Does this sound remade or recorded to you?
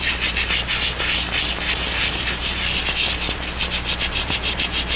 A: recorded